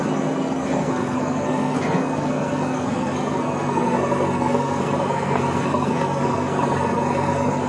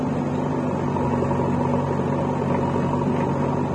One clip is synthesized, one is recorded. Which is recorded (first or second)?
second